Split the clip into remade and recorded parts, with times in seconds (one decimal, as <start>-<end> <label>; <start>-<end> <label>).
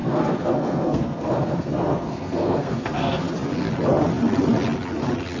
0.0-3.2 remade; 3.2-5.4 recorded